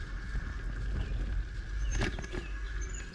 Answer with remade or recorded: recorded